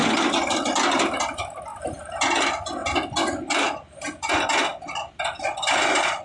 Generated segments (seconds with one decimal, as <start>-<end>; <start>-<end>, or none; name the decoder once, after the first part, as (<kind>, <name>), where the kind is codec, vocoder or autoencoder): none